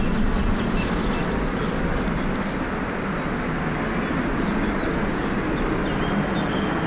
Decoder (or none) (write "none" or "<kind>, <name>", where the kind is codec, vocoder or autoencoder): none